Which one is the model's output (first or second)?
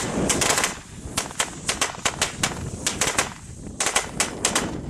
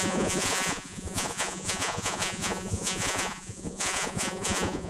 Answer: second